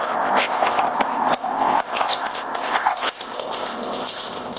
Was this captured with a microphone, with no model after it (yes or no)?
no